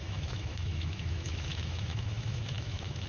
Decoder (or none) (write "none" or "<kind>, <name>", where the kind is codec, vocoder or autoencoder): autoencoder, DAC-VAE